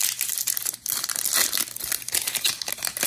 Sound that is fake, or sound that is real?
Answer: real